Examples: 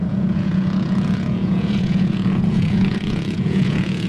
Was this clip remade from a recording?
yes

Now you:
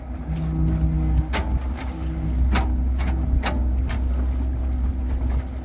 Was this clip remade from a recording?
no